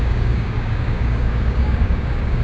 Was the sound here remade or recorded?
remade